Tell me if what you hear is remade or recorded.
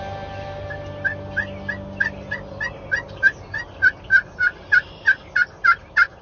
recorded